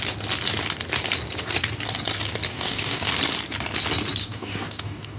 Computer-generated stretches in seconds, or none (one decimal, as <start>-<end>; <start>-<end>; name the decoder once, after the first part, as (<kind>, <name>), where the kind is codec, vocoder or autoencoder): 2.5-3.1 (codec, DAC); 4.2-5.2